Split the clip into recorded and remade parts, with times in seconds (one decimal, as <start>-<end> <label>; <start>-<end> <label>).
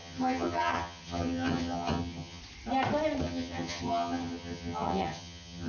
0.0-2.4 remade; 2.4-3.2 recorded; 3.2-5.7 remade